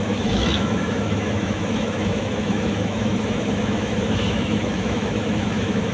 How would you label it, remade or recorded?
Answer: remade